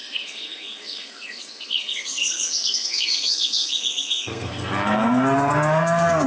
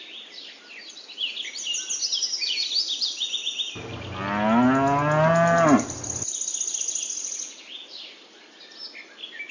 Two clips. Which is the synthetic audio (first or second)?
first